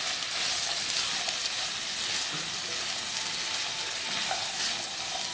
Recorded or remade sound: recorded